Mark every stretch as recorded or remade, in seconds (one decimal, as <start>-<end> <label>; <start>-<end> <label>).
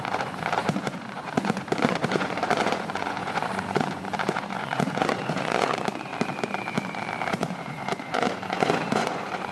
0.0-6.1 remade; 6.1-7.3 recorded; 7.3-9.5 remade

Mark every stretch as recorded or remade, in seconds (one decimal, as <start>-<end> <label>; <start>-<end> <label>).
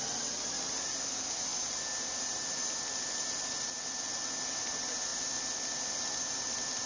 0.0-6.9 recorded